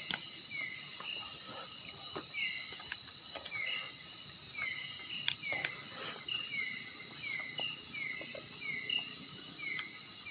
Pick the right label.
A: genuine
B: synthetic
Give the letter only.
A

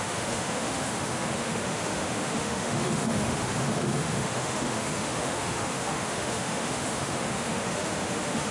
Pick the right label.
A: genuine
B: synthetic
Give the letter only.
B